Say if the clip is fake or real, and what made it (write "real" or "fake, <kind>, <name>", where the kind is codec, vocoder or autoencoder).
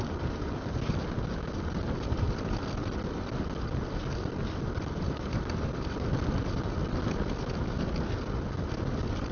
real